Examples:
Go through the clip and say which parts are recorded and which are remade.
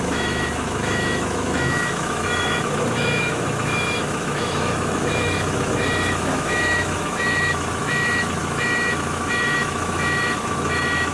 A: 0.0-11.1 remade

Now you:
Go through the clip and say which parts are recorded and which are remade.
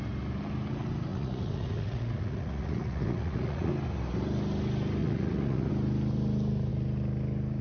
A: 0.0-1.1 recorded; 1.1-3.7 remade; 3.7-5.0 recorded; 5.0-5.7 remade; 5.7-7.6 recorded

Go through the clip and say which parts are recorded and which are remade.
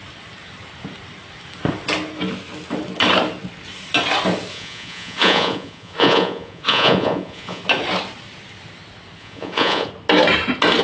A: 0.0-4.5 recorded; 4.5-7.6 remade; 7.6-9.2 recorded; 9.2-9.9 remade; 9.9-10.8 recorded